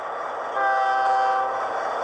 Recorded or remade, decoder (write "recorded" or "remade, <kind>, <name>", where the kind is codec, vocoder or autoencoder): recorded